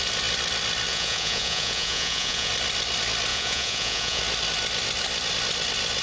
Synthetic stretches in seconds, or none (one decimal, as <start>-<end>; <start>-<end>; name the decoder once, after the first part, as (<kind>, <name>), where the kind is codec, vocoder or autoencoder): 0.9-2.5 (vocoder, Vocos); 3.3-4.2